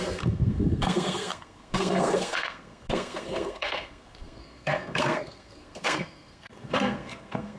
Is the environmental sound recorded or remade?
remade